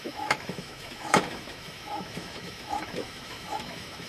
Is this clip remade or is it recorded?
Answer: remade